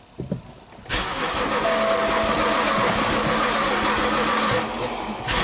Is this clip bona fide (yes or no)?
yes